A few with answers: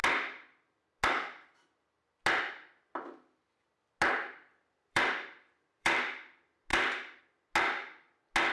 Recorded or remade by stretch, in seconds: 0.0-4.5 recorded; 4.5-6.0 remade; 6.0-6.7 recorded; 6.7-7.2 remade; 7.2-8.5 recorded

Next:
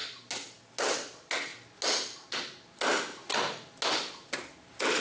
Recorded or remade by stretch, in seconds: 0.0-5.0 recorded

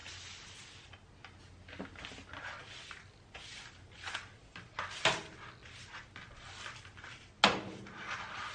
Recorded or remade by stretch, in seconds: 0.0-8.5 recorded